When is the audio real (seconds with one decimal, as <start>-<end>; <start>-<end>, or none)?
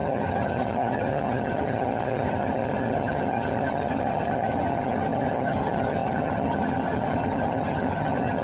none